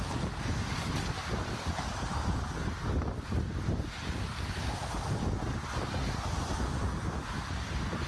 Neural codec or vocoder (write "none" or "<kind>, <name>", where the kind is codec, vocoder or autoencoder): none